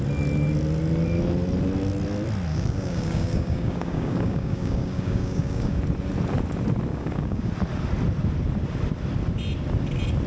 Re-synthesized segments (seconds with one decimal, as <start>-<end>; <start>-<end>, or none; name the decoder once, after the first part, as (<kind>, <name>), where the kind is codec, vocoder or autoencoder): 2.5-5.8 (codec, DAC); 6.9-7.5